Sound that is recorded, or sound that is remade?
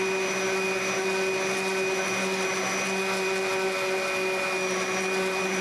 recorded